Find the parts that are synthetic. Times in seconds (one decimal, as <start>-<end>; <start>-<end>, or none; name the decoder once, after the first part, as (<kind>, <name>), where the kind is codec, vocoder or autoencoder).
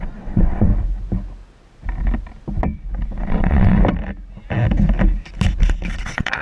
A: 0.0-0.7 (vocoder, WaveNeXt); 3.2-3.8; 6.0-6.4